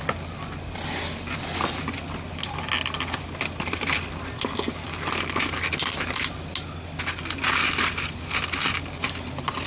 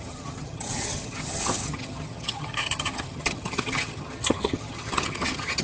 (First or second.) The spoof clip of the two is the second